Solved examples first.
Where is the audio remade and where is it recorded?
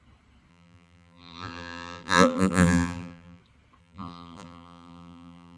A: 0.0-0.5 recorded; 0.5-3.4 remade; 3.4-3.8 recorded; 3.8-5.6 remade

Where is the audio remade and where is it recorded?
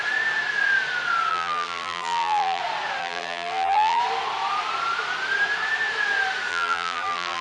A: 0.0-1.3 recorded; 1.3-2.6 remade; 2.6-3.0 recorded; 3.0-4.0 remade; 4.0-6.5 recorded; 6.5-7.4 remade